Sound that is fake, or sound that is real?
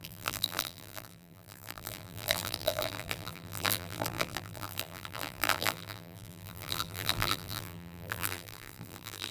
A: fake